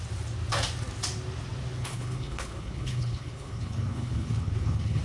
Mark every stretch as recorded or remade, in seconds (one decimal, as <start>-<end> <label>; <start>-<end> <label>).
0.0-1.8 recorded; 1.8-5.0 remade